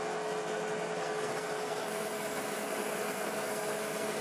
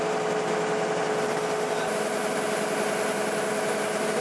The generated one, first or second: first